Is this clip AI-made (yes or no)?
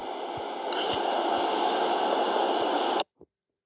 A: no